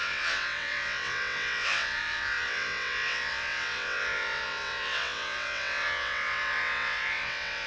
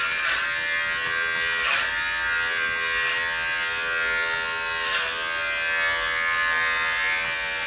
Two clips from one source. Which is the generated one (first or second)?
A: first